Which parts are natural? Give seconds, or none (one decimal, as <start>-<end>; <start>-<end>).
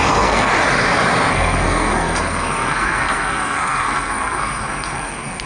0.5-1.3